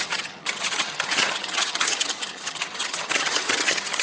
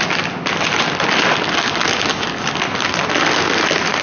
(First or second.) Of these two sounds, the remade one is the first